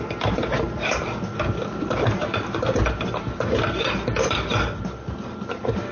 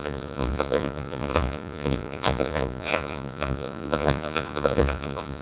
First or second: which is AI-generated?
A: second